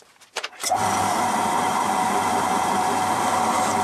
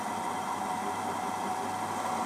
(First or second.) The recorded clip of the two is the second